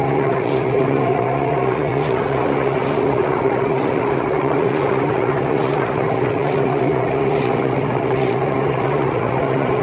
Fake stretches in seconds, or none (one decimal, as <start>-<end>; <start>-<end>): 0.0-9.8